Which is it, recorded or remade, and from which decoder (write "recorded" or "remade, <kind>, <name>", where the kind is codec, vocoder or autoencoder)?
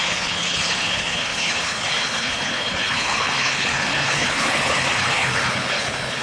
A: remade, codec, HILCodec